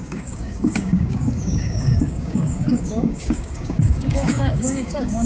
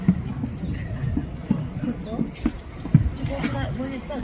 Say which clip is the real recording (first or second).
second